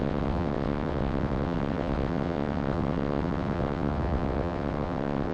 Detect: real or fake fake